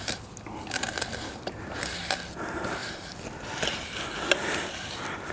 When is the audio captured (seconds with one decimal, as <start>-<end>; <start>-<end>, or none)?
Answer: 0.0-5.3